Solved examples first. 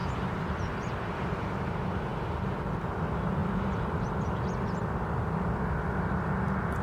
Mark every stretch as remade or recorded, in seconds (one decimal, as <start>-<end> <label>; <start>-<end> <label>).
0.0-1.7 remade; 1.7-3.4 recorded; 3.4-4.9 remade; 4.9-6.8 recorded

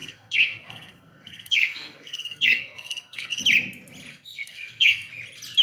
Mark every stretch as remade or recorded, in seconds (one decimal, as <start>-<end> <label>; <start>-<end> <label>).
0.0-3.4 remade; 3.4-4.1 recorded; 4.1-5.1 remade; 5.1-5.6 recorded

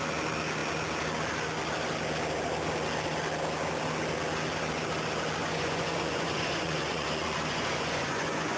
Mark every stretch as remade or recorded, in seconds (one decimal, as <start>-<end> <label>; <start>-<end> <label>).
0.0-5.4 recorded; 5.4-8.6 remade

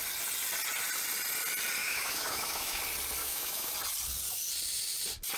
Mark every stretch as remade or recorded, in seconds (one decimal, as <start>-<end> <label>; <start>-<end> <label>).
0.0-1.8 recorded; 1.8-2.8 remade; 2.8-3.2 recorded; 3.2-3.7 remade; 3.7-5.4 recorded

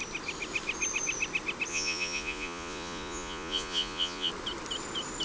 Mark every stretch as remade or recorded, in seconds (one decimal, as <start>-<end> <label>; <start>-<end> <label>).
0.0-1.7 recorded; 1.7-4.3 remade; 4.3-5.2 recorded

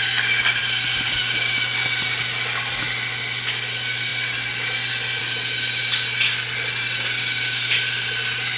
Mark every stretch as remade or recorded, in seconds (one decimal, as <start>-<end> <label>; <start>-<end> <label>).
0.0-8.6 recorded

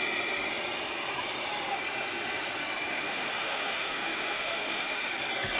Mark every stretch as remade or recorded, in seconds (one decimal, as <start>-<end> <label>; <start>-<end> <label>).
0.0-2.9 recorded; 2.9-5.1 remade; 5.1-5.6 recorded

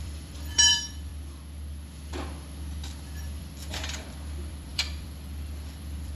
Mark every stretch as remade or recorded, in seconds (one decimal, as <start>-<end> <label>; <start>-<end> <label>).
0.0-1.1 remade; 1.1-3.4 recorded; 3.4-6.2 remade